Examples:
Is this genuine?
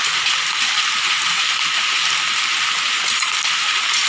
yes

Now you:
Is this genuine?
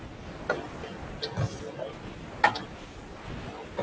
yes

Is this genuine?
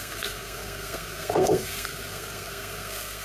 no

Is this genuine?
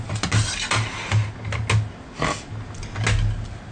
yes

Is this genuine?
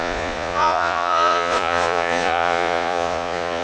no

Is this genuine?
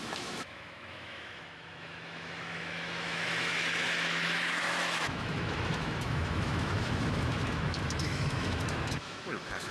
no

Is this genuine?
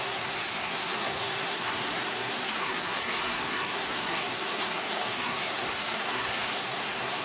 no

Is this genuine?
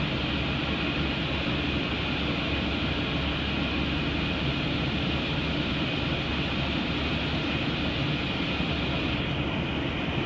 yes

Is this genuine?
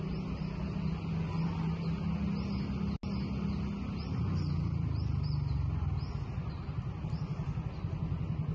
yes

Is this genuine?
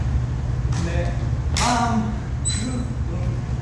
yes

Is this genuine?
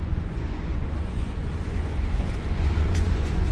no